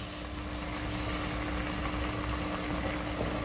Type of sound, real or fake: real